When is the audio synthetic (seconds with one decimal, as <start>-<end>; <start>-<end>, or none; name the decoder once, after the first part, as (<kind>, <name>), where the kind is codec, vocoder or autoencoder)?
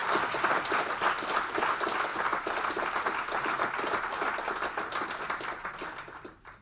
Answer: none